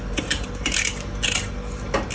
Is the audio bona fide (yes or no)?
yes